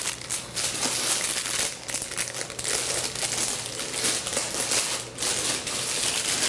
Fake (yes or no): no